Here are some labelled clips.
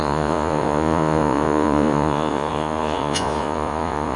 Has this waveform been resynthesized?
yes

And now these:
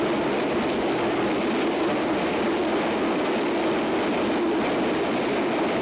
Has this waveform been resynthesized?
no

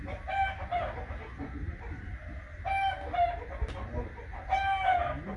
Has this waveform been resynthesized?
no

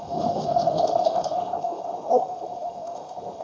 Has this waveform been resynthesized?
yes